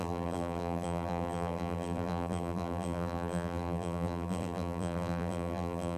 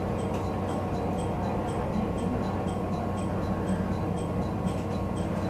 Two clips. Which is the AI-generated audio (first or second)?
first